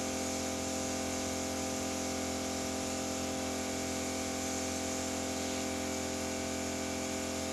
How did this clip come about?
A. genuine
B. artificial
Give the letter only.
A